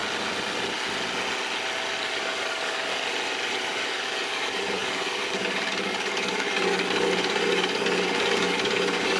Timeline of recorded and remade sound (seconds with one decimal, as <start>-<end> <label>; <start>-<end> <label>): 0.0-1.9 recorded; 1.9-2.9 remade; 2.9-3.5 recorded; 3.5-9.2 remade